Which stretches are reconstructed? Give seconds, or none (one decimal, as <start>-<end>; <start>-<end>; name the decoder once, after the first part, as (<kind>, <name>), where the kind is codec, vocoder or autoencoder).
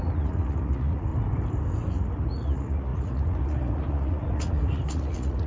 0.0-1.1 (vocoder, Vocos); 1.9-5.5